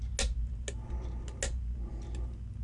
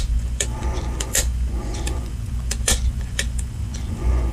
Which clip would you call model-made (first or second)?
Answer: second